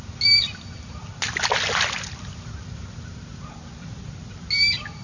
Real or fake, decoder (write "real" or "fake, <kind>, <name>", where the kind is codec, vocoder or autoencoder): real